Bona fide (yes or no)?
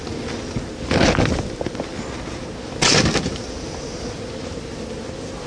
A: yes